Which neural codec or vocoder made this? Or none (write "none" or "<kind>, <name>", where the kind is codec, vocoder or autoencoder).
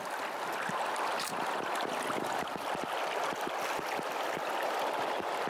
none